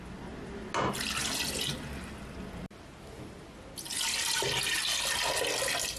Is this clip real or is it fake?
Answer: real